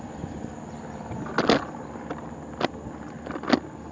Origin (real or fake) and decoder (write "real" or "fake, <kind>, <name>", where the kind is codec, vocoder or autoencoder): real